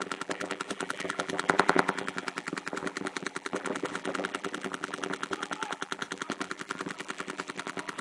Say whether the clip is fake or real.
fake